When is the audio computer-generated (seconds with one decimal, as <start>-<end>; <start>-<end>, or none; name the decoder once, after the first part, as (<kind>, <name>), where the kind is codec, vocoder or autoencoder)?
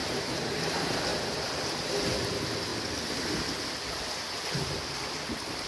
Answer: 0.0-0.6 (vocoder, BigVGAN v2); 1.1-1.9